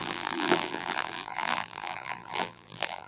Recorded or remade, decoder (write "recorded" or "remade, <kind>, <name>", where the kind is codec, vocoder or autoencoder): remade, vocoder, BigVGAN v2